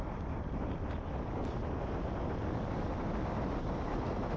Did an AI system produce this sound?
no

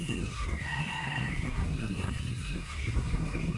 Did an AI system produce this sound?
yes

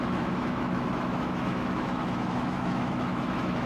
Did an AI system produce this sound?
yes